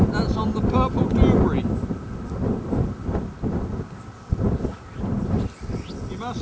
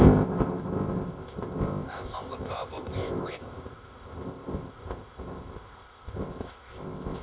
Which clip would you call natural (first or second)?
first